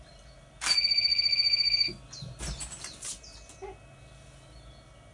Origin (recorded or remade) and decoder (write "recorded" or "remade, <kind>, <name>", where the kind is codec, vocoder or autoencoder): recorded